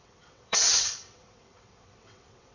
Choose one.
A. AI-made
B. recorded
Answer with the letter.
A